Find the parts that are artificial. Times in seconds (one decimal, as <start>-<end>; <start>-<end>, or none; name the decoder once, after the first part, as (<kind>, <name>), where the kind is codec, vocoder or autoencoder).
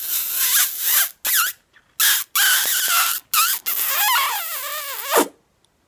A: none